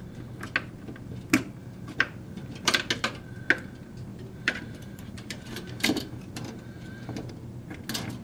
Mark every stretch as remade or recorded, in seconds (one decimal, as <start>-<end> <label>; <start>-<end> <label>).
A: 0.0-1.6 recorded; 1.6-2.9 remade; 2.9-4.1 recorded; 4.1-7.3 remade; 7.3-8.2 recorded